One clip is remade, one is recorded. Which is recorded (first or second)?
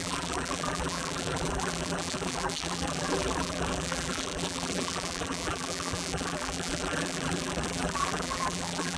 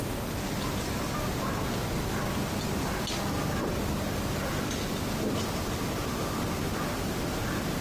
second